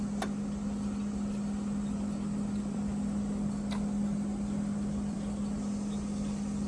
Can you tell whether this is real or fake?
real